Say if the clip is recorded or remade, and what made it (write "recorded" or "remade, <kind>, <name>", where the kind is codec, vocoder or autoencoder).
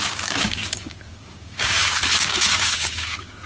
remade, codec, DAC